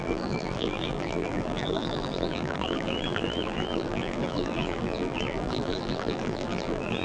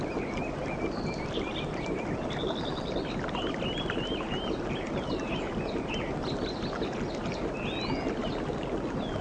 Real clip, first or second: second